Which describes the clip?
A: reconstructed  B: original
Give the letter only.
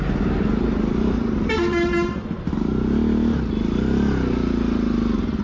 B